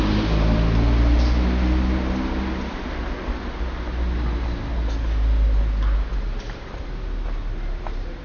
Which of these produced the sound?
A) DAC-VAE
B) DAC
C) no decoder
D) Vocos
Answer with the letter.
C